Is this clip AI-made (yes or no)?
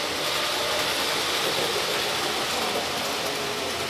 no